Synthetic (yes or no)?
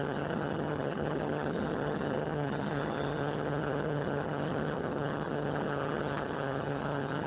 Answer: yes